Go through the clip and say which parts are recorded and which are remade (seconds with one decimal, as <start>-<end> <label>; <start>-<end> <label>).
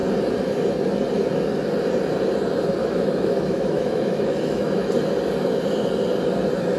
0.0-2.8 recorded; 2.8-4.9 remade; 4.9-6.8 recorded